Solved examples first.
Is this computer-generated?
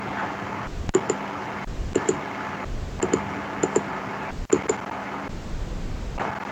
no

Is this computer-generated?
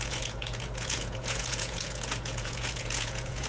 yes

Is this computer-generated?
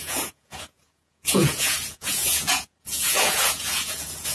yes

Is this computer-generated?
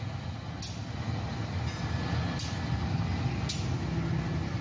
no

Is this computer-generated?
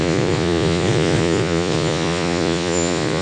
yes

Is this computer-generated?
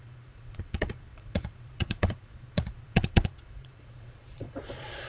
yes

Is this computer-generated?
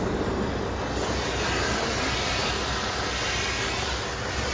no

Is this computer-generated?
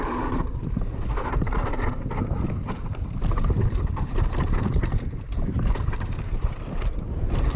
no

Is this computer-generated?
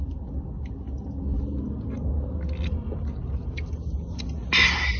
no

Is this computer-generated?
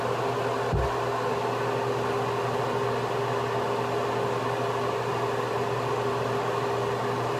no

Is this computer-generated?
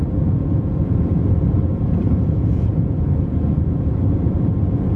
yes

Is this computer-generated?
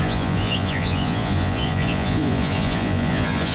yes